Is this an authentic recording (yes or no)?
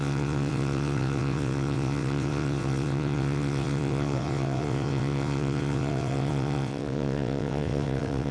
no